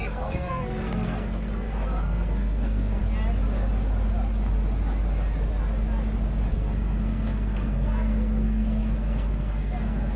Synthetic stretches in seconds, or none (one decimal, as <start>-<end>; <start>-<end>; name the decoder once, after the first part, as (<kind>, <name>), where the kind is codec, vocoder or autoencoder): 0.0-3.0 (codec, SNAC); 6.5-10.2

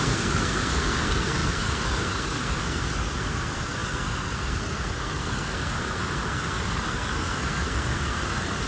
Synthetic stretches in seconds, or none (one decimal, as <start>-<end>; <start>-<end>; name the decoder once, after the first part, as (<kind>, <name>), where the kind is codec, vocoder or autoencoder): 0.0-8.7 (codec, SNAC)

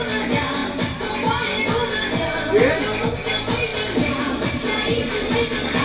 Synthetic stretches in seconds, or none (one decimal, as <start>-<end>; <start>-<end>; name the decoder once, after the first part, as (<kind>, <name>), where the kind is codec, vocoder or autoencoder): 3.7-5.3 (vocoder, BigVGAN v2)

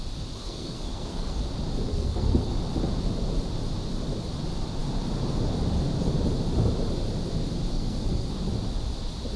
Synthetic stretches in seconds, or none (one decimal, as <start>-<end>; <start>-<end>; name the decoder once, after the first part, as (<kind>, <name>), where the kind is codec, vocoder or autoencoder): 0.4-1.4 (codec, SNAC); 1.9-2.5; 7.7-8.3

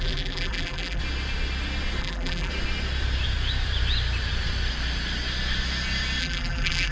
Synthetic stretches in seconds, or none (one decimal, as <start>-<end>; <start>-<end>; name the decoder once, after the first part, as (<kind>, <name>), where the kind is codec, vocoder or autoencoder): 0.0-1.0 (vocoder, BigVGAN v2); 2.0-2.5; 6.2-6.9

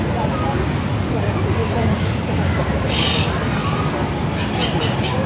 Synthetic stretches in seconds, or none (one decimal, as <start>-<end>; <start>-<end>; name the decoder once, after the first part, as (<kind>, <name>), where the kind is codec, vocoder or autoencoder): none